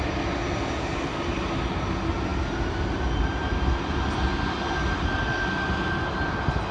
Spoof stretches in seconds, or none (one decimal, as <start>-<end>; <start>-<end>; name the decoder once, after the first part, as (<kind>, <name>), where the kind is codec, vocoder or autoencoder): none